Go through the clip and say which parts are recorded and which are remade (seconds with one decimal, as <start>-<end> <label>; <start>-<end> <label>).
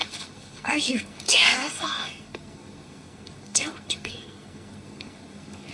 0.0-5.7 remade